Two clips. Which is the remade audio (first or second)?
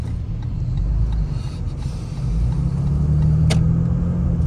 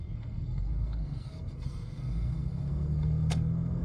second